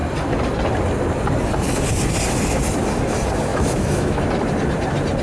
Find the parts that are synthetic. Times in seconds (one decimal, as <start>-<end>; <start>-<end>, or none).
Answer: 3.5-4.2